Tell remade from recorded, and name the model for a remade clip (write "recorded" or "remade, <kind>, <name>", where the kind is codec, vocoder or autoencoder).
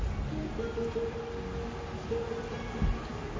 recorded